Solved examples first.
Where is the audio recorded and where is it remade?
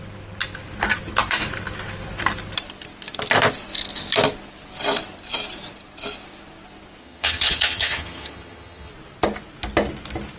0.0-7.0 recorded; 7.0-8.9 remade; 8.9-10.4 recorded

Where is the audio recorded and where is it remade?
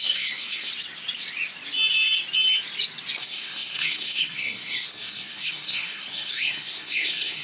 0.0-0.7 remade; 0.7-3.2 recorded; 3.2-7.4 remade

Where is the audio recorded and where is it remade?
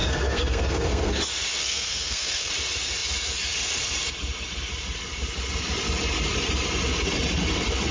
0.0-1.2 remade; 1.2-1.6 recorded; 1.6-2.5 remade; 2.5-7.9 recorded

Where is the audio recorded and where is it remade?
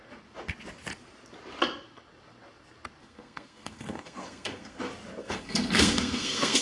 0.0-3.0 recorded; 3.0-4.8 remade; 4.8-5.2 recorded; 5.2-6.6 remade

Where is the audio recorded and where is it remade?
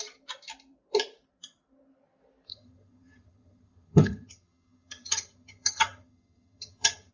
0.0-2.5 recorded; 2.5-7.1 remade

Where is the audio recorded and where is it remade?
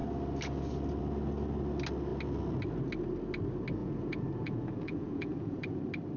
0.0-3.8 recorded; 3.8-5.8 remade; 5.8-6.2 recorded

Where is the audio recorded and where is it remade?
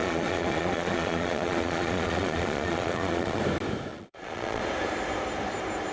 0.0-3.4 remade; 3.4-3.9 recorded; 3.9-4.6 remade; 4.6-5.9 recorded